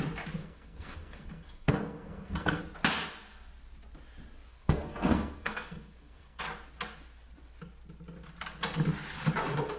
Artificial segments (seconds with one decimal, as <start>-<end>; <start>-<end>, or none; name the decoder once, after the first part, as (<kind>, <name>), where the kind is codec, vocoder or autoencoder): 0.4-2.6 (codec, SNAC); 4.5-6.4